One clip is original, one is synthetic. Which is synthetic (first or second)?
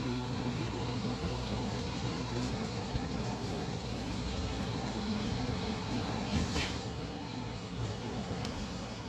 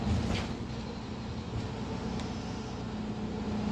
first